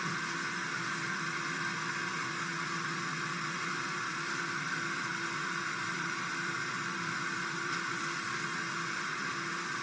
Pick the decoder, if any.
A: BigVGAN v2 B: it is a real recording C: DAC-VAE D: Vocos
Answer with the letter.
A